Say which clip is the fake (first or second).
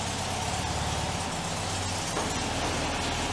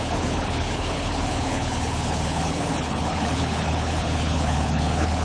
second